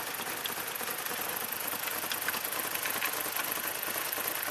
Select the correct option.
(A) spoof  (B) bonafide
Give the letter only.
B